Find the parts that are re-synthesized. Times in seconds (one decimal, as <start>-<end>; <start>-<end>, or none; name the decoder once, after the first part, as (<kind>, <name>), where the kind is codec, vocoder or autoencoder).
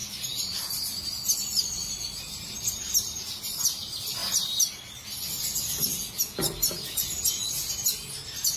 0.0-0.8 (vocoder, BigVGAN v2); 1.8-2.5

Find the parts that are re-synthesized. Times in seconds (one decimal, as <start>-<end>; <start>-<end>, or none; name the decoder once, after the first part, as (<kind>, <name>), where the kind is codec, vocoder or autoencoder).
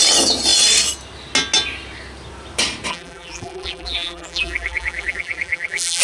2.9-6.0 (vocoder, BigVGAN v2)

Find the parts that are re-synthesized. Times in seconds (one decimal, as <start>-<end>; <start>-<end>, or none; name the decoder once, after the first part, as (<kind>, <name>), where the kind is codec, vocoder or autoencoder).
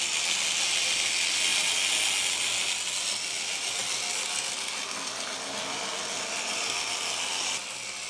none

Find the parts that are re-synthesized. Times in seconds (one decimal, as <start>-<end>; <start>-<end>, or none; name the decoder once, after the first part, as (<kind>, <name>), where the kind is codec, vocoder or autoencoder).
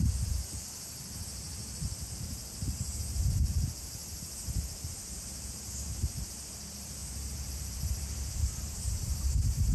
0.0-4.0 (vocoder, BigVGAN v2); 5.2-9.7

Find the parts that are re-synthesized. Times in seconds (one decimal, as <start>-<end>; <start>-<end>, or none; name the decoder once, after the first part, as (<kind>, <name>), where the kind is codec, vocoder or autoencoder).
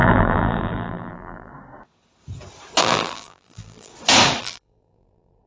0.0-1.5 (vocoder, BigVGAN v2); 2.8-3.9; 4.4-5.5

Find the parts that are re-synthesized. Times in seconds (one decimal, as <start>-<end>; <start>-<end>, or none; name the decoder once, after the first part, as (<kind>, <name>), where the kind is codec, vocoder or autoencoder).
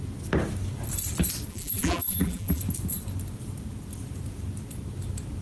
1.5-2.6 (vocoder, BigVGAN v2)